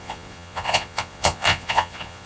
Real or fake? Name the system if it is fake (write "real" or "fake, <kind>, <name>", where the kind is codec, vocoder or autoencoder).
fake, vocoder, Vocos